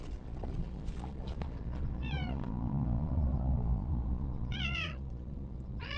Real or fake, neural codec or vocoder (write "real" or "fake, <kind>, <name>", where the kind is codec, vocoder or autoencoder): fake, vocoder, Vocos